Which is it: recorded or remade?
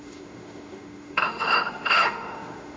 remade